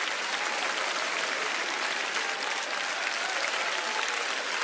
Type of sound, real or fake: fake